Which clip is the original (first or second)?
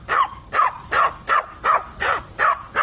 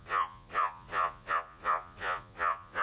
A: first